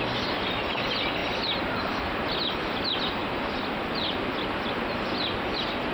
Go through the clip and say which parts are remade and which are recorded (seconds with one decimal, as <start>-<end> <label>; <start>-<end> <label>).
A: 0.0-5.9 recorded